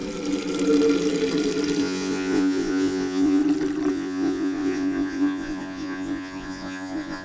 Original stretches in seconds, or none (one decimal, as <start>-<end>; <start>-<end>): 0.0-1.8; 3.4-3.9